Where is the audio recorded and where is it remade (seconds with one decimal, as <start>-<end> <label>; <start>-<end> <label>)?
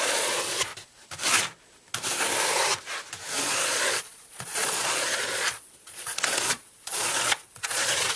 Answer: 0.0-0.7 remade; 0.7-3.4 recorded; 3.4-8.2 remade